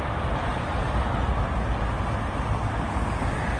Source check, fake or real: real